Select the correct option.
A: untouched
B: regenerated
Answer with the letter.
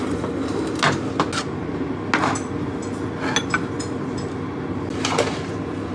A